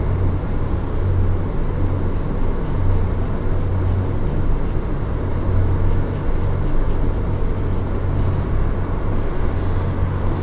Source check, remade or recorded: recorded